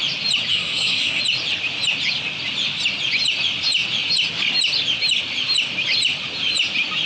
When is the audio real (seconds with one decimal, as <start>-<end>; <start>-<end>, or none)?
0.0-0.5; 1.2-7.1